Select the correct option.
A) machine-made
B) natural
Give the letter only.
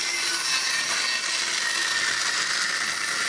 B